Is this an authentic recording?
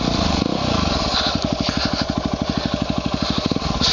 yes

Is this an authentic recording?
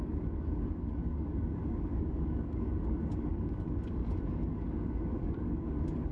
no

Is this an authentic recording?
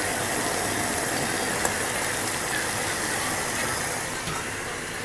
yes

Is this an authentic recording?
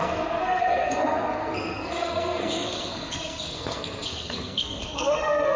no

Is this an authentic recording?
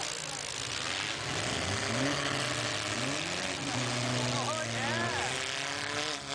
yes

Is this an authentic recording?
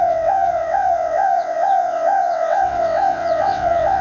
no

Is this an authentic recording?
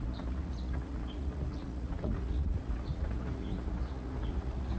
no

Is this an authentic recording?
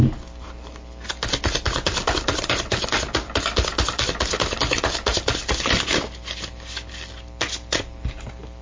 yes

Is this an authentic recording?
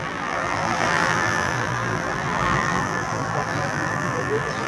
no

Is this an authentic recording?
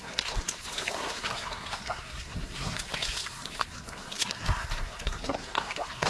no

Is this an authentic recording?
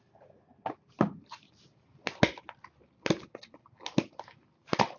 yes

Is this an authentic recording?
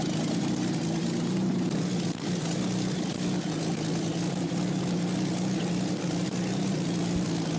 yes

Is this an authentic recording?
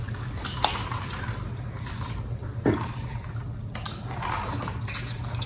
no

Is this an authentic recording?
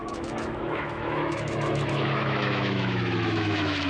no